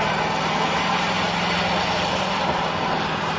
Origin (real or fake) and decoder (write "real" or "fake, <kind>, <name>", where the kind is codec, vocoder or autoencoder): real